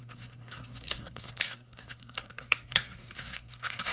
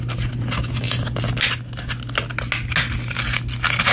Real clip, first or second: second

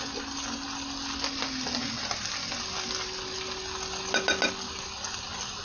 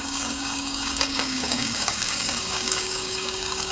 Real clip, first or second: first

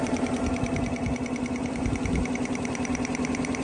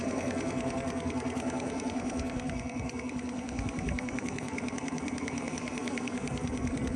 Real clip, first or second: first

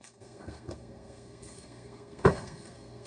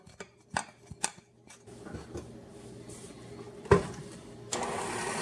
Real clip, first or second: second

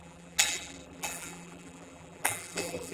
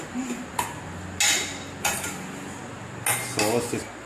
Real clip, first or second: second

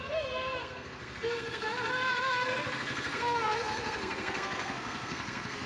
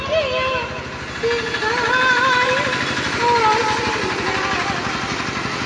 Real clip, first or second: second